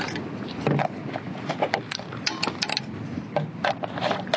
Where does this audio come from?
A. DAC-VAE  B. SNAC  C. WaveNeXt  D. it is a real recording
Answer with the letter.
D